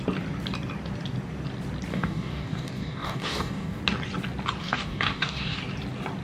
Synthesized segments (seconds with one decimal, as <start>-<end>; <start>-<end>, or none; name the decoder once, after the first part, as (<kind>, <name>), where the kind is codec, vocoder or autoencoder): 1.9-3.8 (codec, DAC); 4.6-5.6